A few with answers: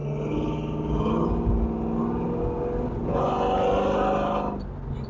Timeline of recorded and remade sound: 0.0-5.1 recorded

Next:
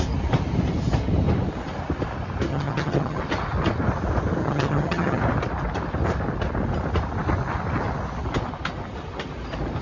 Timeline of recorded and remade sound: 0.0-2.5 recorded; 2.5-3.2 remade; 3.2-4.4 recorded; 4.4-5.2 remade; 5.2-9.8 recorded